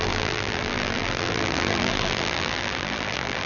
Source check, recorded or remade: remade